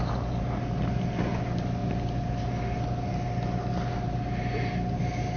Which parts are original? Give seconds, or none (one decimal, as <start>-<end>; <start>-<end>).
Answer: 0.0-5.4